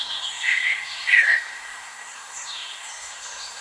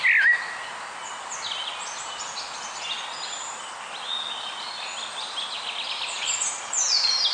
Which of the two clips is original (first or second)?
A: second